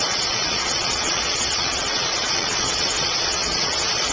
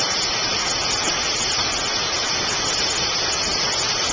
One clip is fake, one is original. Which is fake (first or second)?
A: first